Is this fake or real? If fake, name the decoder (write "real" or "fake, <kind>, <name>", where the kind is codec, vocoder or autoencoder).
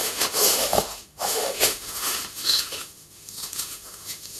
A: fake, autoencoder, DAC-VAE